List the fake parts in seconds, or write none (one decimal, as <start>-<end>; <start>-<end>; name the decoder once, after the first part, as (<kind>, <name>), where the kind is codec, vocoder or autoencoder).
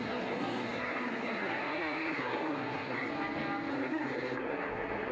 0.0-3.1 (codec, SNAC); 3.7-5.1